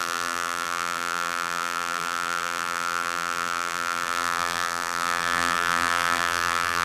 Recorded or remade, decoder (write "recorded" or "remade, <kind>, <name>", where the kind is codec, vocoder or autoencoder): remade, vocoder, BigVGAN v2